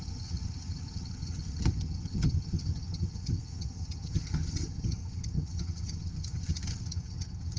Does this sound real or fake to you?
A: fake